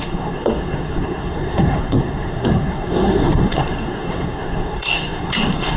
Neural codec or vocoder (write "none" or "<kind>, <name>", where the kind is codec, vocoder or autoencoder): codec, SNAC